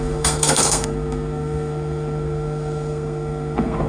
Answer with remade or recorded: remade